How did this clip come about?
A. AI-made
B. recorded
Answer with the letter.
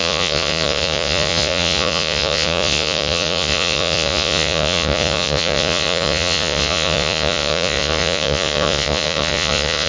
A